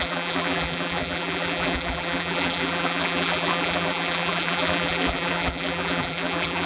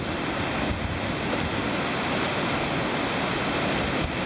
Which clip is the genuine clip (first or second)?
second